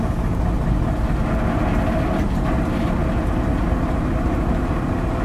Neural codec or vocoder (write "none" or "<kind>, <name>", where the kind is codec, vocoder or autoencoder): none